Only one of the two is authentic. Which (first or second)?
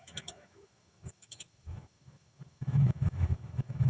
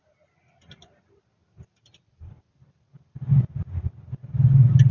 second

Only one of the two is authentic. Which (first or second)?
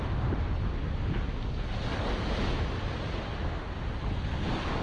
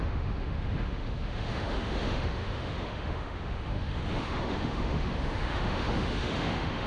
first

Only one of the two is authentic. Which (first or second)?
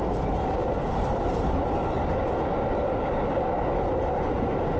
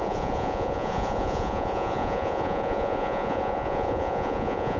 first